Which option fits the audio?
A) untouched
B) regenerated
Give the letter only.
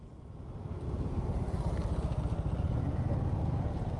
A